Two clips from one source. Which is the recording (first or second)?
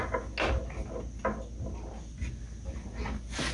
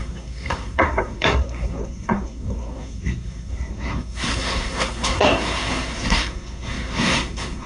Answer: first